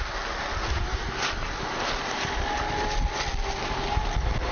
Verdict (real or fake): real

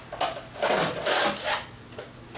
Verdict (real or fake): real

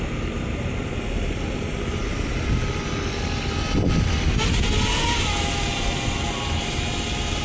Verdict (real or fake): real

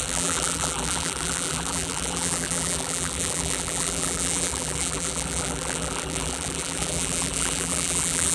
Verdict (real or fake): fake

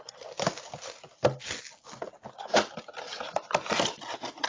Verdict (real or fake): real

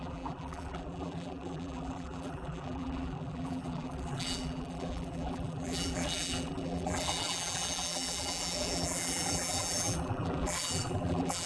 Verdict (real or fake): fake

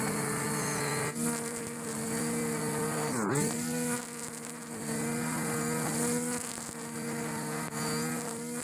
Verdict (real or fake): real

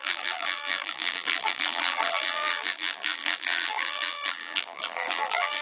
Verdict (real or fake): fake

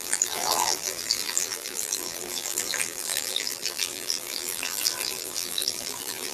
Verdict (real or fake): fake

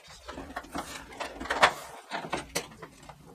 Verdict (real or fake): real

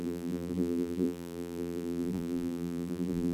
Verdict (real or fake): fake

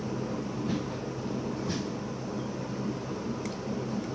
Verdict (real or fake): real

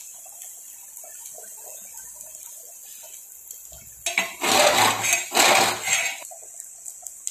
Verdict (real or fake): real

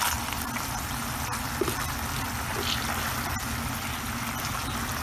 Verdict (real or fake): real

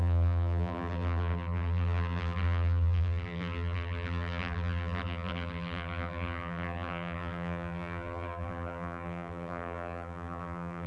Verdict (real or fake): fake